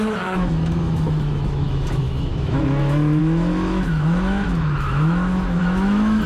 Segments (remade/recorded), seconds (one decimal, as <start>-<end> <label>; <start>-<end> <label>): 0.0-6.3 remade